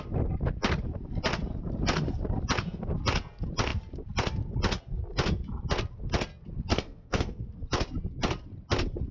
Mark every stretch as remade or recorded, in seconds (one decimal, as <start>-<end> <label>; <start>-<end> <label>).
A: 0.0-6.7 recorded; 6.7-7.4 remade; 7.4-9.1 recorded

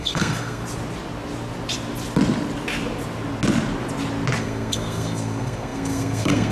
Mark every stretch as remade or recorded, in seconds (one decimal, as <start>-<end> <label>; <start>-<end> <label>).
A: 0.0-0.6 remade; 0.6-4.4 recorded; 4.4-6.5 remade